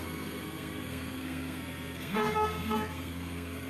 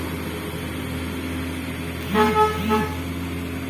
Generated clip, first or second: first